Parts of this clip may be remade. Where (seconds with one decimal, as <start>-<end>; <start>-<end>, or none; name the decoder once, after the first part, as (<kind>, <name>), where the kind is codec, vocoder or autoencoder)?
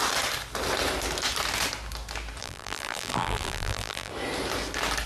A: 2.4-4.1 (vocoder, BigVGAN v2)